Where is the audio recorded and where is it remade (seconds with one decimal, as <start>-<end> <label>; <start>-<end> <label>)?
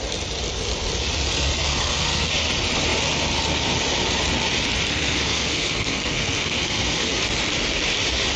0.0-1.7 recorded; 1.7-2.3 remade; 2.3-4.9 recorded; 4.9-7.2 remade; 7.2-8.4 recorded